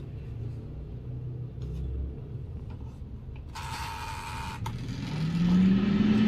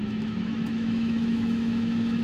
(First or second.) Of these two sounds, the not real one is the second